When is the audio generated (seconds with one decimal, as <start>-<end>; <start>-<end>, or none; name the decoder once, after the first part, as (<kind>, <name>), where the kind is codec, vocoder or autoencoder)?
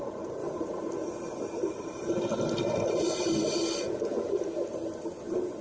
none